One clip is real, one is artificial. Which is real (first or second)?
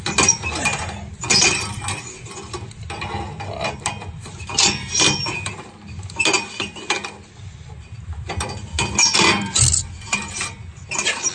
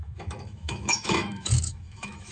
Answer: first